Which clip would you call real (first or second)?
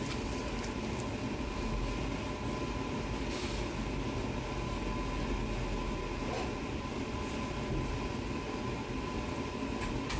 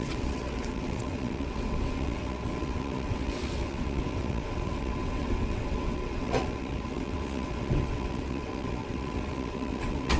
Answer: first